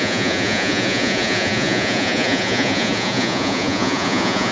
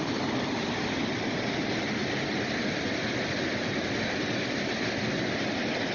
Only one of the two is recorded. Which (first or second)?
second